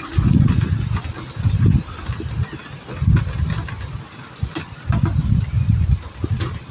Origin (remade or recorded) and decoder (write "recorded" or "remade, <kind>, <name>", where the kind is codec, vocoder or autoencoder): recorded